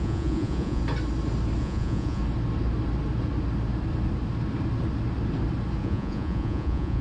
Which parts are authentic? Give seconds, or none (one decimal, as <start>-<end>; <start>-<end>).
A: 0.8-1.6; 2.2-5.8